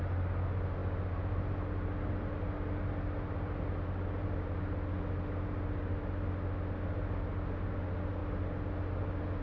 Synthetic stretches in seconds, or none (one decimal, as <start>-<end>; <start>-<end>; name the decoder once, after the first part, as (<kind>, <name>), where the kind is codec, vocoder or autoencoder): none